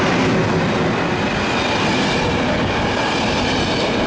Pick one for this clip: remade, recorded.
recorded